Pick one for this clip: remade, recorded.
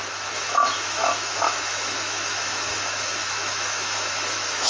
remade